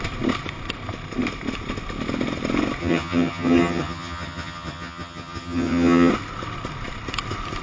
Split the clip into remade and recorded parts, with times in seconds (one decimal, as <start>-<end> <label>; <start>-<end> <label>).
0.0-2.8 recorded; 2.8-6.1 remade; 6.1-7.6 recorded